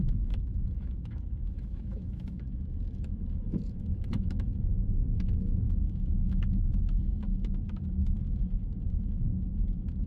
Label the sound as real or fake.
fake